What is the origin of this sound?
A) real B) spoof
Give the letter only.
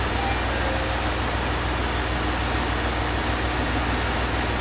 A